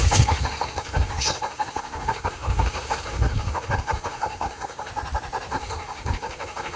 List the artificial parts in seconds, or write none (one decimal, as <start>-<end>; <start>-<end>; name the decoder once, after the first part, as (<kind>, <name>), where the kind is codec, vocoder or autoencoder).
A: 0.0-4.9 (codec, SNAC); 5.5-6.8

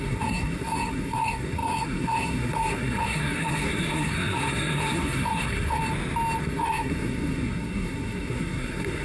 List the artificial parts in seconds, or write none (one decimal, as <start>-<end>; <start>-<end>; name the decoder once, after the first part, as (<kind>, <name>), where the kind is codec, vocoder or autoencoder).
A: 0.0-5.8 (codec, SNAC); 6.4-9.0

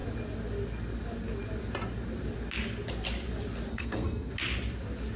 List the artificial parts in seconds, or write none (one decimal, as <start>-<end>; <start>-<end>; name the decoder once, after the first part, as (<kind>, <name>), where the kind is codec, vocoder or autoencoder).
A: 3.7-4.3 (codec, SNAC)

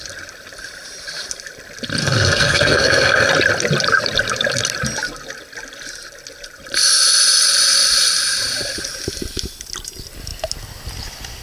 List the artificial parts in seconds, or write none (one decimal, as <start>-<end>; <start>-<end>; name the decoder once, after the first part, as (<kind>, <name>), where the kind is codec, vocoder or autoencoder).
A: 2.0-3.3 (codec, SNAC)

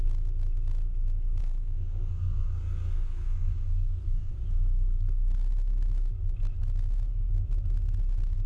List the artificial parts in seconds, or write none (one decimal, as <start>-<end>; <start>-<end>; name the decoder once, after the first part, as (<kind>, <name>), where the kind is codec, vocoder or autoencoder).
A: 1.4-4.3 (codec, SNAC)